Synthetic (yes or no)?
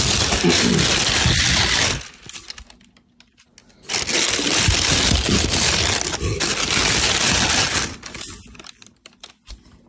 no